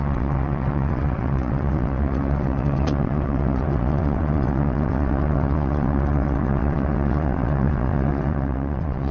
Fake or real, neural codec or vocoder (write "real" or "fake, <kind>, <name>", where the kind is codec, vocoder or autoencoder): fake, vocoder, WaveNeXt